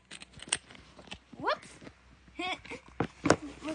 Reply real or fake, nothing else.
real